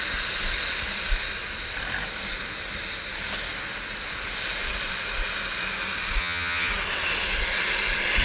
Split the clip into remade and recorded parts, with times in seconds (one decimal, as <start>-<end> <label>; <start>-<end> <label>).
0.0-6.2 recorded; 6.2-6.7 remade; 6.7-8.2 recorded